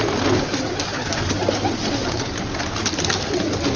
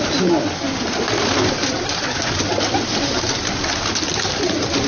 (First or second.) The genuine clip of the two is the first